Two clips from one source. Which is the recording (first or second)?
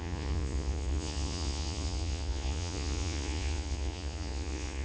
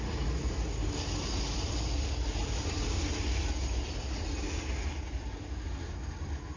second